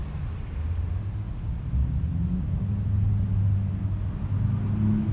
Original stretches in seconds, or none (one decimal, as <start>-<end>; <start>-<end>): 0.0-5.1